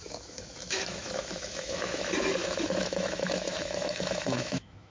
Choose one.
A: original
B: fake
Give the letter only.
B